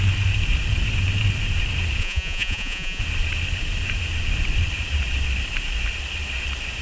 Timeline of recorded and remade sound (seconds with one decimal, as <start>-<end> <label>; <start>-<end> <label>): 0.0-2.0 recorded; 2.0-3.0 remade; 3.0-6.8 recorded